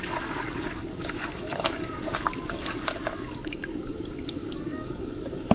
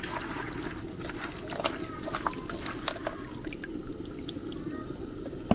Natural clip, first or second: second